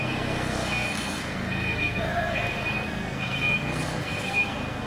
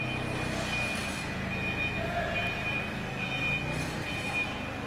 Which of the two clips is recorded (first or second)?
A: second